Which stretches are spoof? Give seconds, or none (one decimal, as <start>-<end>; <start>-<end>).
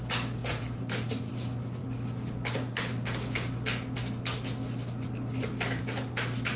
0.4-1.3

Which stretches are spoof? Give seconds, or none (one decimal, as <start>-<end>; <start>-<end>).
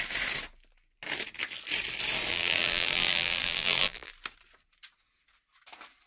2.3-4.1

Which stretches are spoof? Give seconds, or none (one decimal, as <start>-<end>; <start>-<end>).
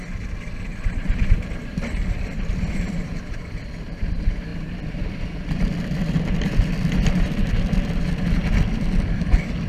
0.7-3.3; 4.5-9.7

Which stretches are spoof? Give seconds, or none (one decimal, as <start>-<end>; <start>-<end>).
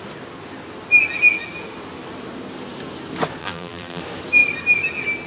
3.4-4.0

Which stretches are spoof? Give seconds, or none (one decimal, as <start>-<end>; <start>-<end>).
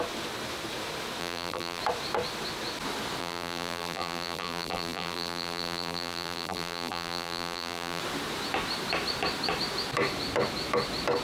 1.2-1.8; 3.2-8.0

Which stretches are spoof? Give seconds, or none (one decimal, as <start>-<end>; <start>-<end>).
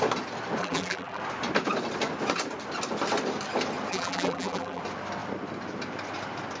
0.6-1.2; 3.9-4.8